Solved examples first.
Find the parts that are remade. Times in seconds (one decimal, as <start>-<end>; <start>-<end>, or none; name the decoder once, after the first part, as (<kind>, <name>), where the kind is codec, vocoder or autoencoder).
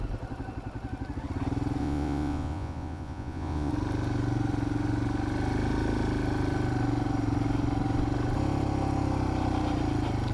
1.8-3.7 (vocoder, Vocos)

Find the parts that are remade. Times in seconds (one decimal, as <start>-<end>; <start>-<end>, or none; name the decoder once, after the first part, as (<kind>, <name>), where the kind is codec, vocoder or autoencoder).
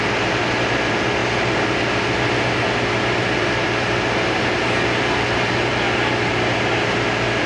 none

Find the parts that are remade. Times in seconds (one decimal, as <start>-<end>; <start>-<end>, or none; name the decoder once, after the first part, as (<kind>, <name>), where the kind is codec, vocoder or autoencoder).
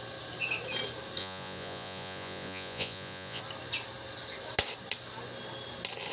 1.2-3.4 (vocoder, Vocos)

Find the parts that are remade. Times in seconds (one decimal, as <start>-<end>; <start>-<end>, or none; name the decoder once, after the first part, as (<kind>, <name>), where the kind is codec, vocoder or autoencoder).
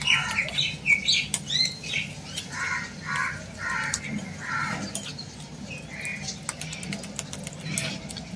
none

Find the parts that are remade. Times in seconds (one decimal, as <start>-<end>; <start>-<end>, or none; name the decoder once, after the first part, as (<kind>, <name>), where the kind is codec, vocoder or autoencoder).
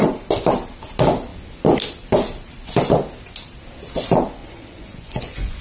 4.4-5.6 (vocoder, Vocos)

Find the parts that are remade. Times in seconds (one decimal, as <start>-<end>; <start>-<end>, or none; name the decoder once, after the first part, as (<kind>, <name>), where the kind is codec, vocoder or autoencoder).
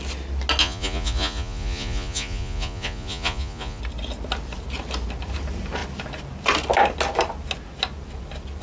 0.6-3.8 (vocoder, Vocos)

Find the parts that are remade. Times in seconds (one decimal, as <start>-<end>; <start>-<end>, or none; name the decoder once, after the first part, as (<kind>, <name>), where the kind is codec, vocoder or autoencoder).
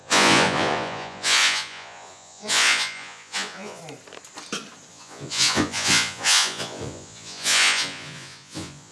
0.0-3.8 (vocoder, Vocos); 4.9-8.9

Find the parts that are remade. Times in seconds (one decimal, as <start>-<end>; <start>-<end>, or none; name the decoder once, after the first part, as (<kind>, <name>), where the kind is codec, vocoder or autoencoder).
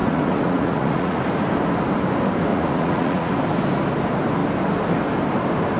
0.0-1.2 (vocoder, Vocos); 2.5-3.3